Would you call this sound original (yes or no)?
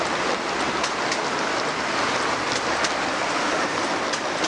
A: yes